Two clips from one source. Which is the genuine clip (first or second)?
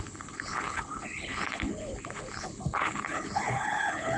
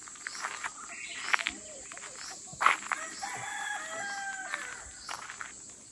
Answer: second